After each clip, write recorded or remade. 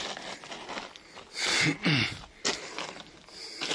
recorded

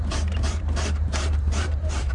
remade